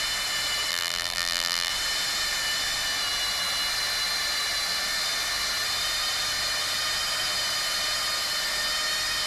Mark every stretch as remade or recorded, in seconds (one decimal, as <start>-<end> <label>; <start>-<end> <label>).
0.0-0.7 recorded; 0.7-1.7 remade; 1.7-9.3 recorded